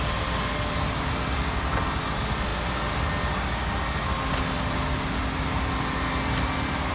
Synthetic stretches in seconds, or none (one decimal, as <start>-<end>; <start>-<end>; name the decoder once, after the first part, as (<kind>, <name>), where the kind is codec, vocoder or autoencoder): none